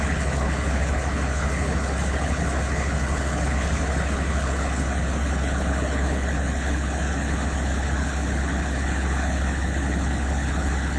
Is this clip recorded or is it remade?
remade